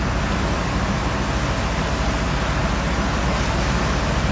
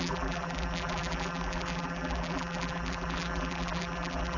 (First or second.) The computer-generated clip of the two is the second